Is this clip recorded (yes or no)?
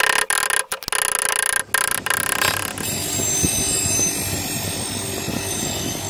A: yes